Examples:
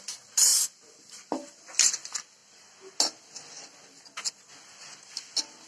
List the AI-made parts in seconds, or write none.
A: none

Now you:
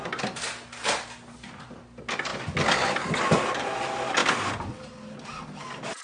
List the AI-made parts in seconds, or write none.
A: none